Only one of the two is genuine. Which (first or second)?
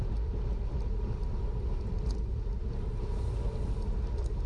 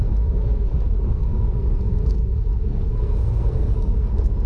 first